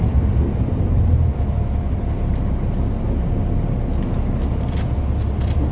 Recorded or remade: recorded